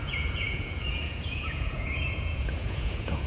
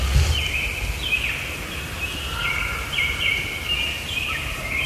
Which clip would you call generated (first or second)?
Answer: first